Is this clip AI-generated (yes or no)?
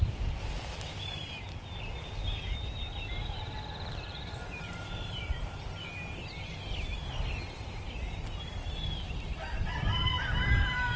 no